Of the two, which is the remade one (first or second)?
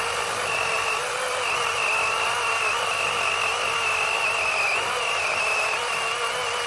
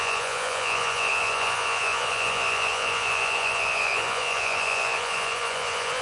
second